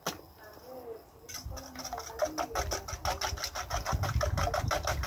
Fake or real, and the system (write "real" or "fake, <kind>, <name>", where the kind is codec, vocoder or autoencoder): real